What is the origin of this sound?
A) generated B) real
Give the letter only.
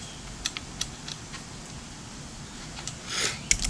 B